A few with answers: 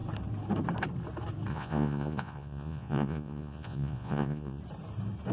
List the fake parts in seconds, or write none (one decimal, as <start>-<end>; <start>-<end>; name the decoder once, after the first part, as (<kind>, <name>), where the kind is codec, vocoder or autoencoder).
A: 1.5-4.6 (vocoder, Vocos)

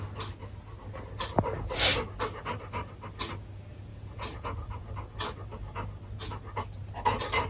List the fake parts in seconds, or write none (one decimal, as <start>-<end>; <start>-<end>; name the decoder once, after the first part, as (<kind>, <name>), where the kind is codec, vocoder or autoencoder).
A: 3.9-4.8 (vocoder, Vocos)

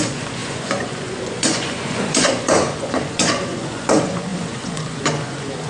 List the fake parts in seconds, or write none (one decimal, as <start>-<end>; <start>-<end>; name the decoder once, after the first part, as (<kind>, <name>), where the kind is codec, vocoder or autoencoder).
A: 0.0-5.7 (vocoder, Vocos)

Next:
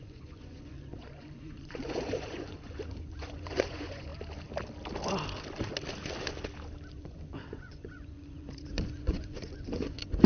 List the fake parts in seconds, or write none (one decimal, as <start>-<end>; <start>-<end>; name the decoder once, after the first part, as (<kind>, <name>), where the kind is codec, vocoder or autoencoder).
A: 0.0-4.1 (vocoder, Vocos); 6.9-10.3

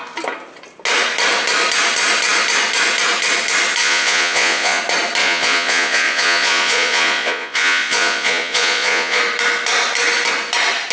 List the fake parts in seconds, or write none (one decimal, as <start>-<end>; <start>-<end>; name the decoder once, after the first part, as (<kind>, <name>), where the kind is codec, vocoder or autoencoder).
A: 3.8-4.8 (vocoder, Vocos); 5.2-9.2